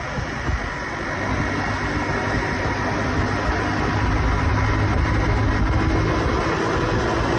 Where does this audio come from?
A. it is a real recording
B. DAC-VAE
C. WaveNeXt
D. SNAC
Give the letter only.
A